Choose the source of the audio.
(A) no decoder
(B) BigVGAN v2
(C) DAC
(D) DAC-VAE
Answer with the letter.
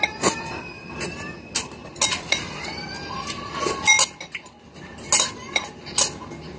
A